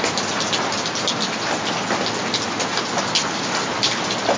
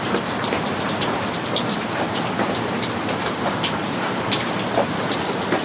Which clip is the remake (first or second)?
second